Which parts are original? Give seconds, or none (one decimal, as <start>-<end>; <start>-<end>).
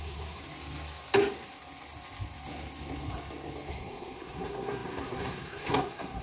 0.4-3.7